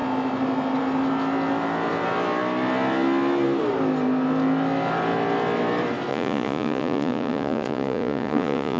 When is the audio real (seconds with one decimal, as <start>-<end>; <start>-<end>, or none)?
0.0-6.1